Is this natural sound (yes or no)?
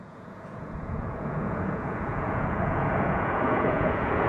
no